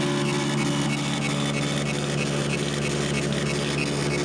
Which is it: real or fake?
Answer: real